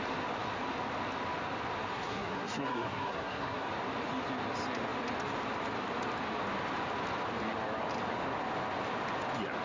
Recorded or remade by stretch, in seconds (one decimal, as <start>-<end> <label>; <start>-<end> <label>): 0.0-1.9 recorded; 1.9-3.7 remade; 3.7-9.6 recorded